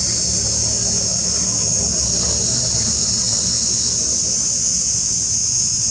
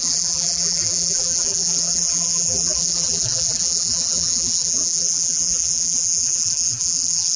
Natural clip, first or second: first